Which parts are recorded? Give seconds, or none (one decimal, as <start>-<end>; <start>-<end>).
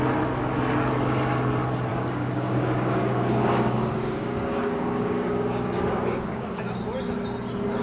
0.0-1.9; 6.6-7.8